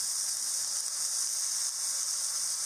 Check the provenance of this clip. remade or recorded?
recorded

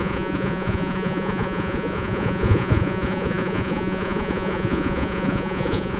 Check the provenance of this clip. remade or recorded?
remade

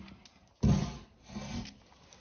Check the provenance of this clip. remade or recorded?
recorded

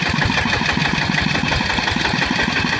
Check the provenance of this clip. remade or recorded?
recorded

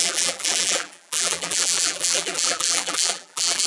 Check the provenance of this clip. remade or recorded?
remade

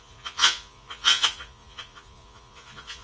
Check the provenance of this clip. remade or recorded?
remade